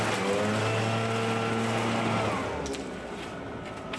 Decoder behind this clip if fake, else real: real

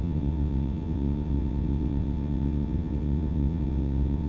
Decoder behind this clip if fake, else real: fake, vocoder, WaveNeXt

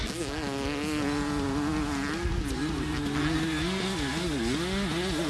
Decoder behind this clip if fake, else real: real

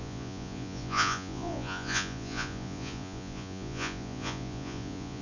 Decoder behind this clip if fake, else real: fake, vocoder, Vocos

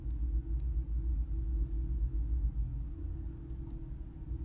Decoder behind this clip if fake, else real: real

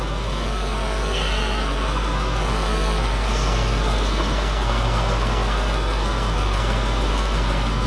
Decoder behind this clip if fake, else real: fake, codec, SNAC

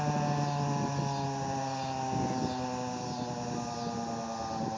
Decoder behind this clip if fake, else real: real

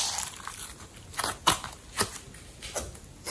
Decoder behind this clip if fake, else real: real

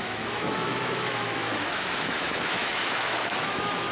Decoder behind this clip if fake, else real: fake, autoencoder, DAC-VAE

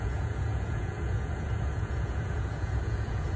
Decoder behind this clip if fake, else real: fake, vocoder, Vocos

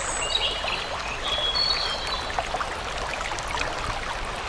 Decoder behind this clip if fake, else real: real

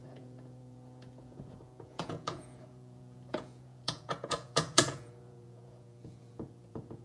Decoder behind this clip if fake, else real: fake, vocoder, Vocos